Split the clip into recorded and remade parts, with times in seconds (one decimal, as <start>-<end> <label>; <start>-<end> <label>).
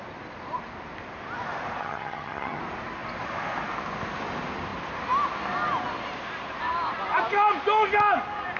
0.0-1.8 recorded; 1.8-2.6 remade; 2.6-8.6 recorded